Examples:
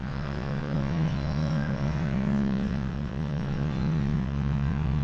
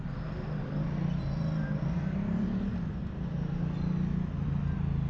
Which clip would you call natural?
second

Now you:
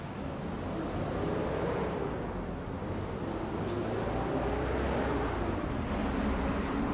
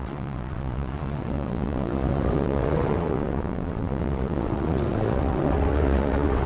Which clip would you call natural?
first